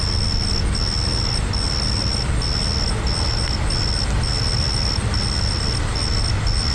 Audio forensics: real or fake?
real